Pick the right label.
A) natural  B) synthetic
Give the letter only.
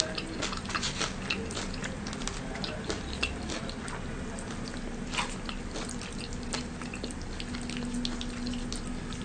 A